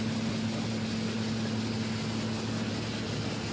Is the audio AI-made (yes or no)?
no